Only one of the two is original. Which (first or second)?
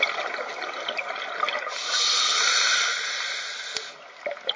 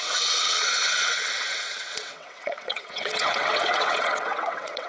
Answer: first